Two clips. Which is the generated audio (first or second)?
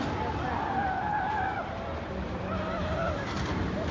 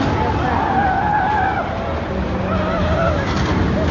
first